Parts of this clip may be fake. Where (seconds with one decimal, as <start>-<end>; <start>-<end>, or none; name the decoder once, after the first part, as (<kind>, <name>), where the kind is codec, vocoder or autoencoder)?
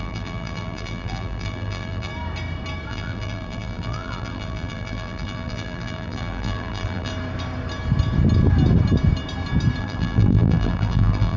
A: 0.0-2.1 (vocoder, BigVGAN v2); 2.9-7.1; 9.8-11.4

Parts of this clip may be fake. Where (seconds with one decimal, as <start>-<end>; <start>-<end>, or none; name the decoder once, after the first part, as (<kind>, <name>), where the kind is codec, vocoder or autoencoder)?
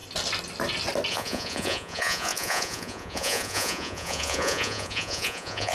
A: 1.1-5.7 (vocoder, Vocos)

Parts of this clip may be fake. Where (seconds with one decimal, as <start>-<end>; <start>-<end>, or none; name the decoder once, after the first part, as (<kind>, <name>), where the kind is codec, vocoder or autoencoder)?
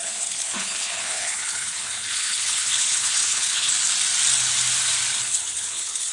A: 0.0-3.7 (codec, HILCodec); 5.1-6.1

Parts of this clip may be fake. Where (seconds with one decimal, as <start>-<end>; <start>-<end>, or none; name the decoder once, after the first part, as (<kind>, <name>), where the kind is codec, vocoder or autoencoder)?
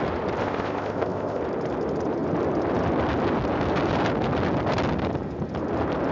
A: 0.4-1.4 (codec, ZipCodec)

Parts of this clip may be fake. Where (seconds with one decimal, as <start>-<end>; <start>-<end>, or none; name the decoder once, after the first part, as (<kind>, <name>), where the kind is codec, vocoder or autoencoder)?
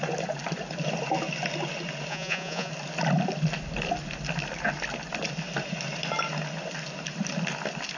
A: 2.1-2.7 (vocoder, Vocos)